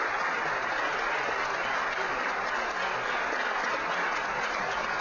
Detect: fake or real real